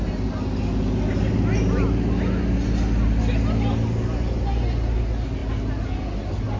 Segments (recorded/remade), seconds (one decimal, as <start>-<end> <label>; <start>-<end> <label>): 0.0-6.6 recorded